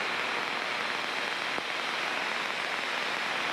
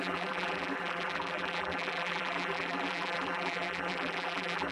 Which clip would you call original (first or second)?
first